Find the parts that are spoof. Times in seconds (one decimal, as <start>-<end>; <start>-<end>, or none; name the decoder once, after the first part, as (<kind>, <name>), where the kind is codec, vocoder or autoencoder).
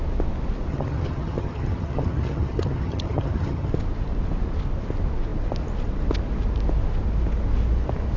0.7-3.7 (vocoder, HiFi-GAN)